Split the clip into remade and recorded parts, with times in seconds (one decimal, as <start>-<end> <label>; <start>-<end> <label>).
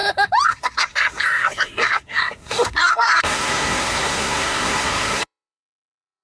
0.0-0.5 recorded; 0.5-6.2 remade